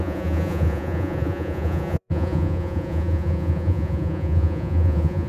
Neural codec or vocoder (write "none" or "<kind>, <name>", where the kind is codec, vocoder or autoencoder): vocoder, Vocos